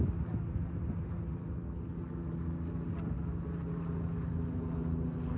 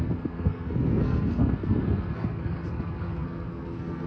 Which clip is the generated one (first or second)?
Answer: second